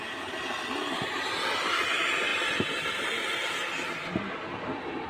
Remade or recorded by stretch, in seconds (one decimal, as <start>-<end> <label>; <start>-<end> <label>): 0.0-5.1 recorded